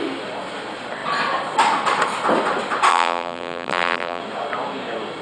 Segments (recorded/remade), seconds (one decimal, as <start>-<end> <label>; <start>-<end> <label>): 0.0-2.9 recorded; 2.9-4.2 remade; 4.2-5.2 recorded